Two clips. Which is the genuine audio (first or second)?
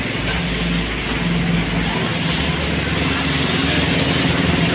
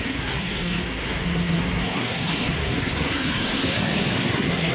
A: first